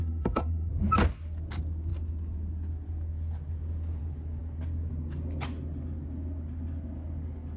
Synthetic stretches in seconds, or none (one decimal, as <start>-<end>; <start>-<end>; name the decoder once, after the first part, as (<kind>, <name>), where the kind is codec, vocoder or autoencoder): 0.0-0.7 (codec, SNAC)